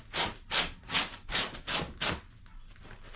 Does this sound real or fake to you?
real